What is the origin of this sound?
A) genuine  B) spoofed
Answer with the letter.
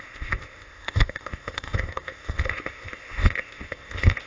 B